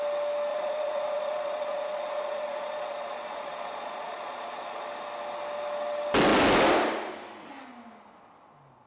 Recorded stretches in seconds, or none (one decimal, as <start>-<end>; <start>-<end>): 0.0-0.5; 4.9-8.9